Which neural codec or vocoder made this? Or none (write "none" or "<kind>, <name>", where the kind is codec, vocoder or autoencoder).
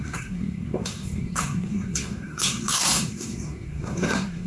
codec, SNAC